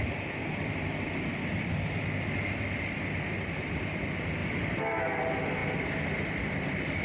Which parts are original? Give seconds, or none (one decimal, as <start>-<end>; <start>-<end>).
0.0-0.4; 1.7-4.4; 4.9-5.6